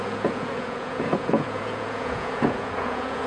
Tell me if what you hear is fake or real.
fake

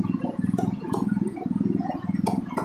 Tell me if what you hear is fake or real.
fake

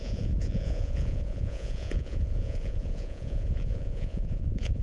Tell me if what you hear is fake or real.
fake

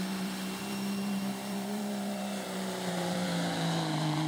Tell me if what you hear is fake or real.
fake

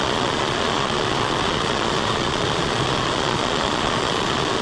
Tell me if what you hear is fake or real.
fake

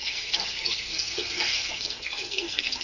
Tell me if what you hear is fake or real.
fake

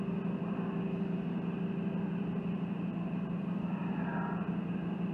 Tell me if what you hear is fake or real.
real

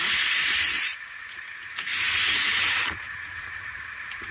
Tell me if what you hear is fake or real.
fake